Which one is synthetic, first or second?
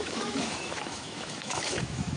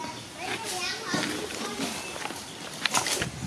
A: first